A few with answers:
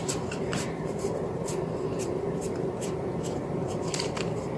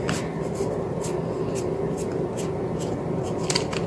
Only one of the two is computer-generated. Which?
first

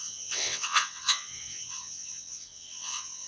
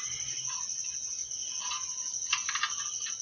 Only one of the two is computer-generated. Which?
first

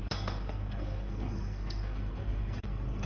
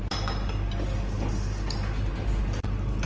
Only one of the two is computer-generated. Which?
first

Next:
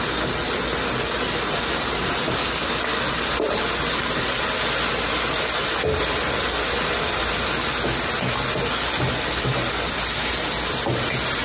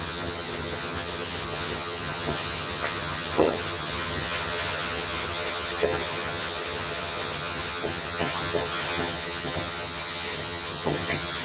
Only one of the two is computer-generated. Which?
second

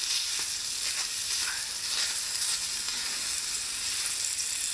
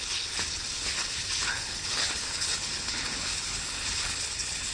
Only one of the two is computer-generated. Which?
second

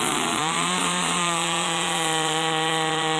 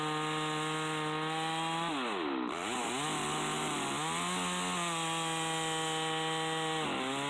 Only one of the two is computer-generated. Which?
first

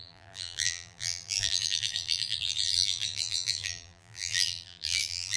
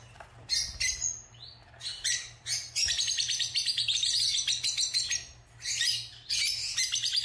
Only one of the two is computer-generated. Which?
first